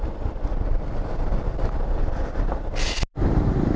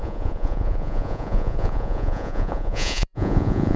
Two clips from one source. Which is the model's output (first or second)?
second